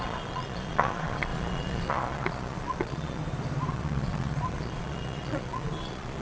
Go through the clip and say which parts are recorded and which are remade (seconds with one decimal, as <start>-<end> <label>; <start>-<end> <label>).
0.0-3.2 remade; 3.2-3.7 recorded; 3.7-6.2 remade